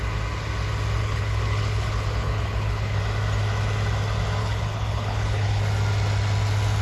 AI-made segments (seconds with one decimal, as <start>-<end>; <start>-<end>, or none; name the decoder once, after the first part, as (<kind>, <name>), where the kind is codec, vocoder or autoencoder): 1.0-3.0 (codec, HILCodec); 4.4-5.6